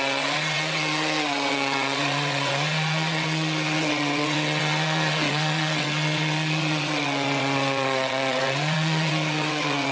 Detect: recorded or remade remade